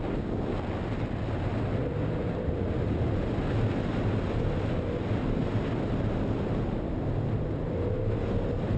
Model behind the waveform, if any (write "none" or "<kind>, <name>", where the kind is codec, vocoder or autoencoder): none